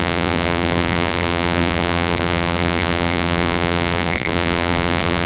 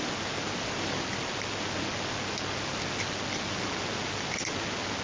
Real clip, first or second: second